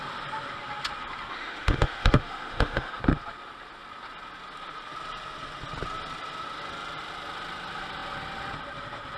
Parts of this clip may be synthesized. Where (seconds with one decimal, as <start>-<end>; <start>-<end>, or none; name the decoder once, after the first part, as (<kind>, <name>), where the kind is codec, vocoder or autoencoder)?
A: 1.3-3.0 (autoencoder, DAC-VAE)